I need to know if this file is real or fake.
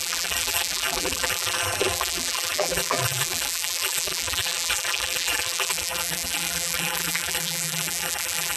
fake